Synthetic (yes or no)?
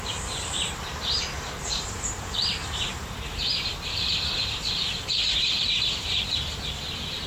yes